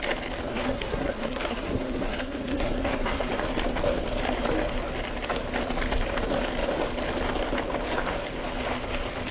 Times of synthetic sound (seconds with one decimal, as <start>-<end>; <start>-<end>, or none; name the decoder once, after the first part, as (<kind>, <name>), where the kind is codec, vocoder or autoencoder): 0.5-3.3 (codec, SNAC)